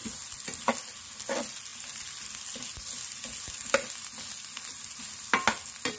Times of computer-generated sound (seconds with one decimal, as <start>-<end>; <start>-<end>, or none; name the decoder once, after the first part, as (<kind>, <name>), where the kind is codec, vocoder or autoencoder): none